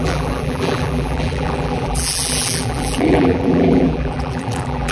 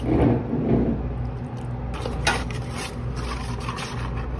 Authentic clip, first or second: second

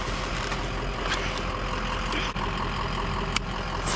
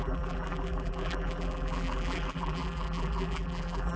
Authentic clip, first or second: first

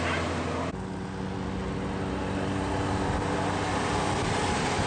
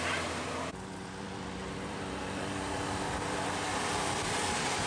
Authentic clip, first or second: first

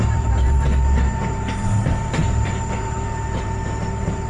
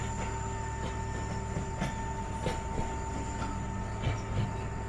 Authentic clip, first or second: second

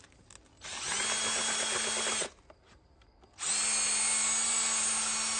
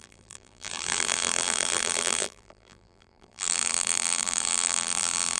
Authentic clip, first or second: first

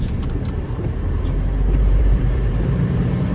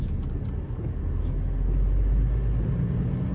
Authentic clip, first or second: second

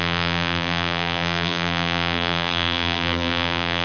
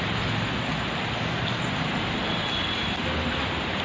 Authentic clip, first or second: second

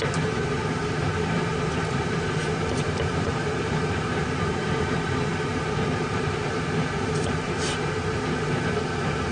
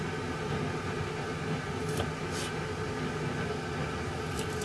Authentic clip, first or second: second